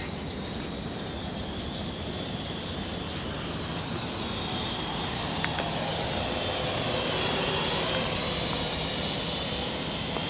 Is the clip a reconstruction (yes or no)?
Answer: no